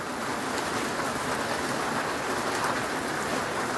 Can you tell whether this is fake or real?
real